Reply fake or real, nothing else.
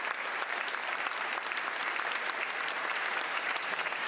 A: fake